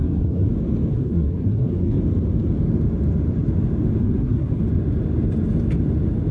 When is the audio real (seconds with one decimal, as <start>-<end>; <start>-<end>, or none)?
0.5-0.9; 2.0-4.0; 4.6-6.3